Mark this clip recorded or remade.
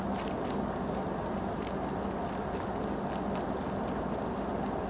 recorded